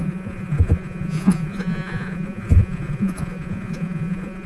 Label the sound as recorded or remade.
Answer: remade